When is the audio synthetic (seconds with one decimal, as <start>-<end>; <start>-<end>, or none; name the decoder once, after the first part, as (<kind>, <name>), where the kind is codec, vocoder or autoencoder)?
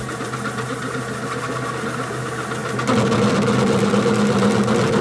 none